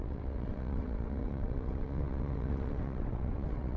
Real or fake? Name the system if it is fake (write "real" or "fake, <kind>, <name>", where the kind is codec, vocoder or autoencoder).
fake, vocoder, WaveNeXt